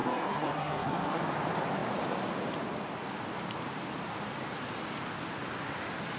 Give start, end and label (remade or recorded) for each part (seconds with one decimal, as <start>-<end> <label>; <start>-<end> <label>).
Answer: 0.0-1.2 remade; 1.2-6.2 recorded